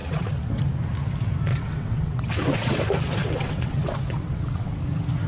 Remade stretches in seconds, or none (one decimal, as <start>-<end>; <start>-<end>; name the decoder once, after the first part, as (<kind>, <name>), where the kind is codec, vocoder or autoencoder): 0.0-0.6 (vocoder, WaveNeXt); 1.5-2.8; 3.2-4.7